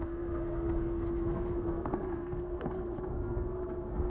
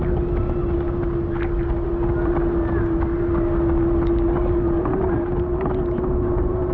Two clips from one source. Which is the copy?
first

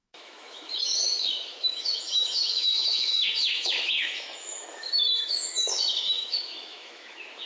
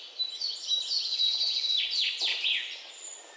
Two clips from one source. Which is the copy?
first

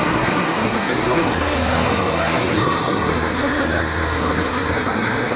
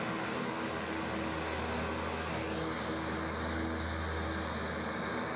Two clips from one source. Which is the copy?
first